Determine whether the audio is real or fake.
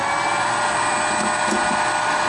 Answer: real